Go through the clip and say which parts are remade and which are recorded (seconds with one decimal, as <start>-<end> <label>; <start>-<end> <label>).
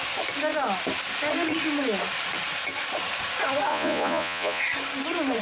0.0-3.7 recorded; 3.7-4.6 remade; 4.6-5.4 recorded